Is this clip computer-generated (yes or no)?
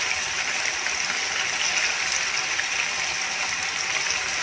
no